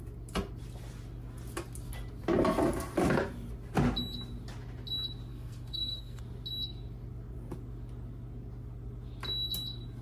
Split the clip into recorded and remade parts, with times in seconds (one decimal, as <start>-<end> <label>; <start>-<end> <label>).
0.0-5.3 recorded; 5.3-6.2 remade; 6.2-10.0 recorded